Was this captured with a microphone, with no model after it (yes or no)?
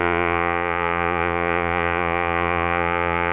no